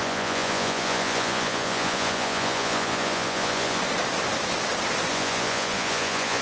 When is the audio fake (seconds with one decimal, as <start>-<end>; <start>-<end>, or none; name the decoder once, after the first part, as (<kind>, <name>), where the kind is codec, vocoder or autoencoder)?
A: 0.0-3.8 (vocoder, Vocos); 5.1-6.4